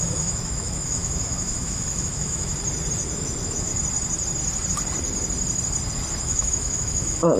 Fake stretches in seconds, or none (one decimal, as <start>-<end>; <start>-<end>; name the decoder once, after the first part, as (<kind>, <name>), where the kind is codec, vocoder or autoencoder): 0.0-2.5 (autoencoder, DAC-VAE); 3.1-3.7; 6.2-7.4